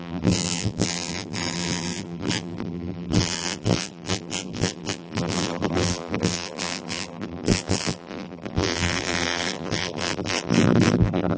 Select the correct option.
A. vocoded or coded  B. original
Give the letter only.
A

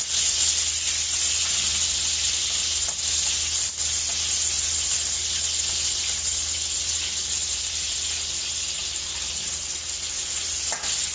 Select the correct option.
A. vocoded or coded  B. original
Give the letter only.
B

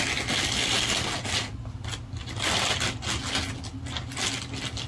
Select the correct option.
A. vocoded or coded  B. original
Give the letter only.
B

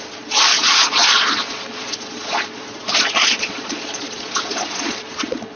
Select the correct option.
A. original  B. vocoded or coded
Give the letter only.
B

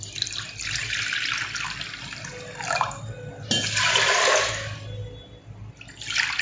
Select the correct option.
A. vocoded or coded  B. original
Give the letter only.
B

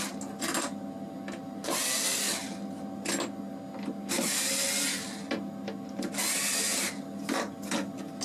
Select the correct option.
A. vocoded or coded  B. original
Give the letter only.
B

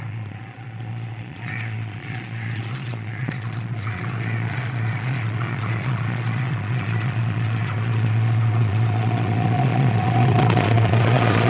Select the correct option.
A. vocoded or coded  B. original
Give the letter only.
A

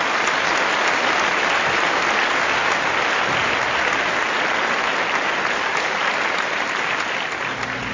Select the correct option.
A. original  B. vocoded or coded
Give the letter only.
A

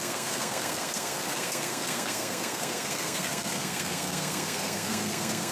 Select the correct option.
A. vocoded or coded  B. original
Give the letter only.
A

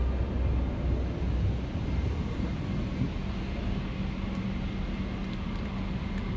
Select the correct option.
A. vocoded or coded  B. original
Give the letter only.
B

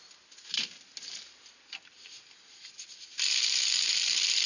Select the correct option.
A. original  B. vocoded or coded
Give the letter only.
A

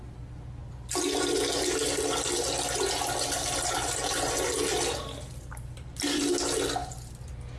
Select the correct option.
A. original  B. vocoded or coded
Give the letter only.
A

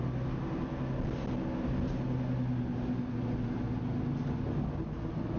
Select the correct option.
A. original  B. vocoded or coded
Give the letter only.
A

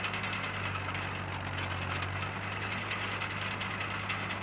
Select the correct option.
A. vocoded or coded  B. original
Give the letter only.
B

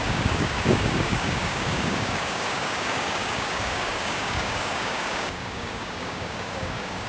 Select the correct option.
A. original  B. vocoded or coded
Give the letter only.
B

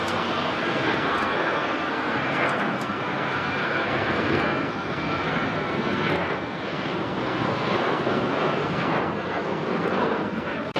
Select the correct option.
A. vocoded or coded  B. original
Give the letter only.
A